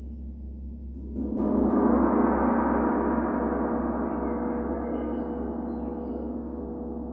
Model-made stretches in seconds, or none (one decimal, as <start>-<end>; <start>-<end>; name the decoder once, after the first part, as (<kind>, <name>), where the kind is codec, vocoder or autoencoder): 4.7-5.2 (codec, SNAC); 6.1-6.6